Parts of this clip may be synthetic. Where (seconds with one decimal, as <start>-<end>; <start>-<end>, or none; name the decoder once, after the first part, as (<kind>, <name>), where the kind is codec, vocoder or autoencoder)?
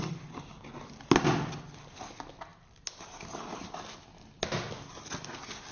none